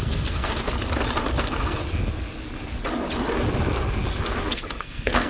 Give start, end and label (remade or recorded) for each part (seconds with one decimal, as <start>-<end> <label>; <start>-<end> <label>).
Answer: 0.0-0.7 remade; 0.7-1.4 recorded; 1.4-1.8 remade; 1.8-4.5 recorded; 4.5-5.3 remade